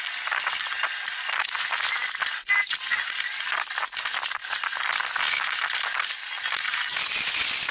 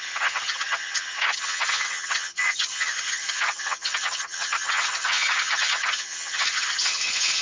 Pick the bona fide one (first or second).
first